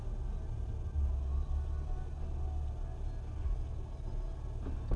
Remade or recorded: recorded